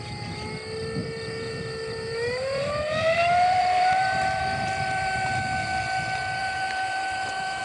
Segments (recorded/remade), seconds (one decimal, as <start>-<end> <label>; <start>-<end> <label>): 0.0-1.0 recorded; 1.0-5.4 remade; 5.4-6.4 recorded; 6.4-7.6 remade